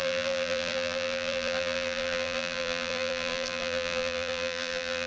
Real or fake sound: fake